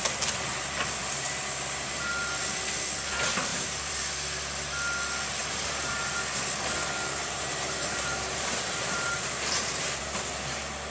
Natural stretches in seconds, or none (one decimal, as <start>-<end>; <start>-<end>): 0.0-1.0; 2.0-3.5; 4.0-5.4; 6.1-7.2; 10.0-10.9